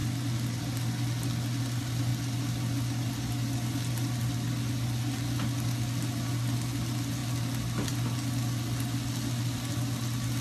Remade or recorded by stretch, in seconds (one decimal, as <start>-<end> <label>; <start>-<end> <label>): 0.0-10.4 recorded